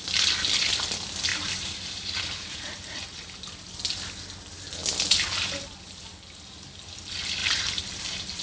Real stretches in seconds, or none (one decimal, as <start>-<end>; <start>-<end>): 0.0-1.3; 3.4-7.4